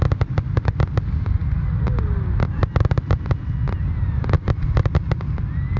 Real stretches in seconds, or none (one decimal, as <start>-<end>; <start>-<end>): 0.0-5.8